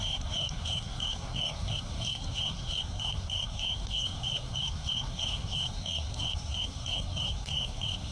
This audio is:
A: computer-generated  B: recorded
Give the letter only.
A